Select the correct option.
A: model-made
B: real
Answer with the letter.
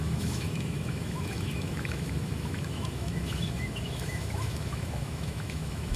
A